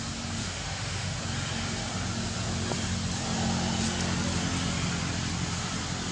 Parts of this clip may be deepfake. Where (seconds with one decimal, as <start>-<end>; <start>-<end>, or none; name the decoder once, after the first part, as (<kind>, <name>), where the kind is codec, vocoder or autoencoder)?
0.4-1.2 (autoencoder, DAC-VAE)